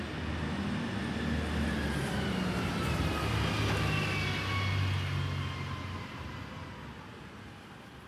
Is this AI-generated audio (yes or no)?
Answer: no